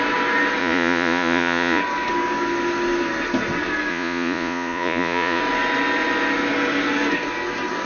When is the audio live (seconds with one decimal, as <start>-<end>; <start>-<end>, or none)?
0.0-0.6; 1.8-3.9; 5.4-7.9